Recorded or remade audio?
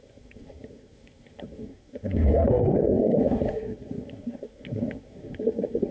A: remade